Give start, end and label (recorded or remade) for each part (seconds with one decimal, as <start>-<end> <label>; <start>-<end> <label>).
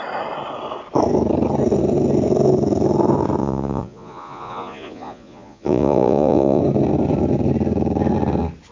0.0-3.4 recorded; 3.4-6.6 remade; 6.6-8.7 recorded